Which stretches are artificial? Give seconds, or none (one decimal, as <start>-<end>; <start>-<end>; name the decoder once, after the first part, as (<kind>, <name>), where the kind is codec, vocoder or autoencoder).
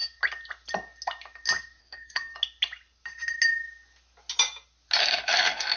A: 1.8-2.3 (codec, SNAC); 5.0-5.8